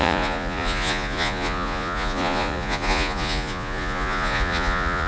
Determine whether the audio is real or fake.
fake